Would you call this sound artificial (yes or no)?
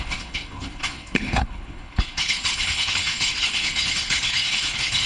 yes